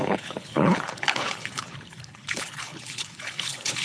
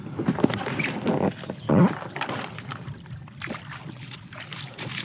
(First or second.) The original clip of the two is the second